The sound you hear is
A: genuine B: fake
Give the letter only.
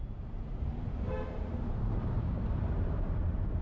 B